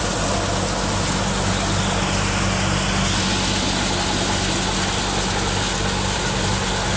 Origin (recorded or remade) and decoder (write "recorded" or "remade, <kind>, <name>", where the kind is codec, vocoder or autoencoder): recorded